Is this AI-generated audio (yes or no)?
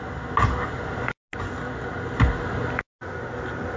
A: no